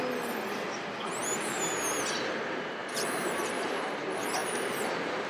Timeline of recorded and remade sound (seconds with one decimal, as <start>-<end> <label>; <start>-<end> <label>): 0.0-1.2 recorded; 1.2-1.7 remade; 1.7-2.8 recorded; 2.8-3.7 remade; 3.7-4.4 recorded; 4.4-5.3 remade